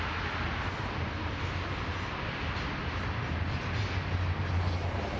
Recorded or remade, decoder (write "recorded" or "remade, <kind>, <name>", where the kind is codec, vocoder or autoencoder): recorded